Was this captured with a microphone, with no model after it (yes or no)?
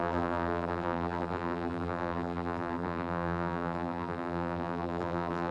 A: no